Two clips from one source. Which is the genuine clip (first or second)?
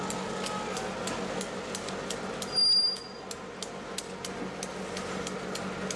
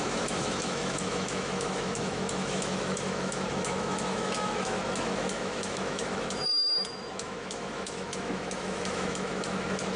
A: first